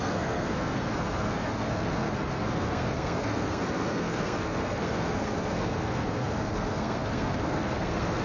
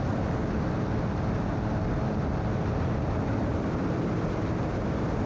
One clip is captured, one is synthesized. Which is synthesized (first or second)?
first